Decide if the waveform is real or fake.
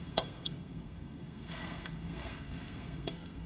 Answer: fake